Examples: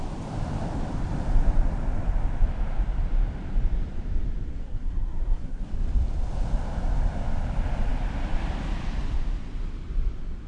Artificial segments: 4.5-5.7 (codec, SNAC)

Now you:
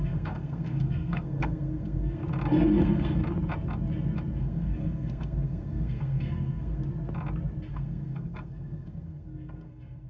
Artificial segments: 0.0-2.2 (codec, SNAC); 2.8-3.2; 4.4-6.8; 7.7-10.1

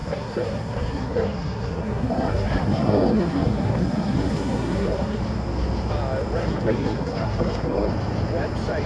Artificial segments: 0.0-5.2 (codec, SNAC); 6.4-7.9

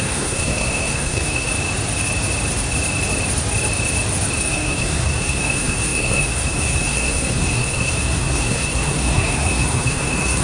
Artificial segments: 0.0-1.5 (codec, SNAC); 4.4-10.4